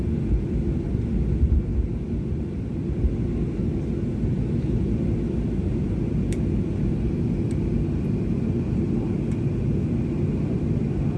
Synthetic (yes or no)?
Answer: no